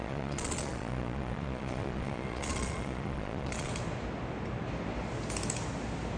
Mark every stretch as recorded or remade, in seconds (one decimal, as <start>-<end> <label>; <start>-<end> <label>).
0.0-3.7 remade; 3.7-6.2 recorded